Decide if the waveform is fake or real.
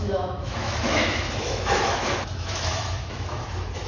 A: fake